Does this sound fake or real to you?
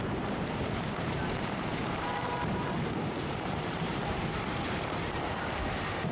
fake